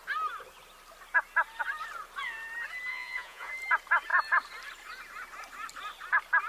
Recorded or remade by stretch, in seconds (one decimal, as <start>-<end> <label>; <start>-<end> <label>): 0.0-2.9 recorded; 2.9-3.5 remade; 3.5-6.5 recorded